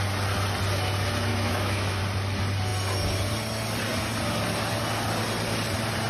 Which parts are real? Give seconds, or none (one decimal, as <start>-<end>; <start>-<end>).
0.0-1.3; 2.0-6.1